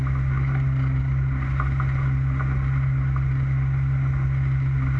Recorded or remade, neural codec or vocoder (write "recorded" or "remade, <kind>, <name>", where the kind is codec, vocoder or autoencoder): recorded